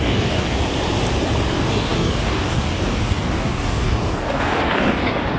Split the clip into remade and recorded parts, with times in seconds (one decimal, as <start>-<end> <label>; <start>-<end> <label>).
0.0-0.6 remade; 0.6-1.5 recorded; 1.5-5.4 remade